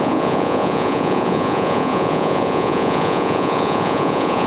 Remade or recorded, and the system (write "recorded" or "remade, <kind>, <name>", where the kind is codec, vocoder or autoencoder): remade, vocoder, Vocos